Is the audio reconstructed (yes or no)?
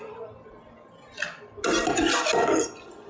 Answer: no